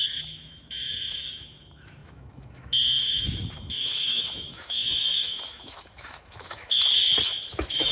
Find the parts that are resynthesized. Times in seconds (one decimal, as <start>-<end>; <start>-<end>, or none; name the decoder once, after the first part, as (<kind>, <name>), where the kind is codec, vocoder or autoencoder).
0.0-6.8 (autoencoder, DAC-VAE); 7.5-7.9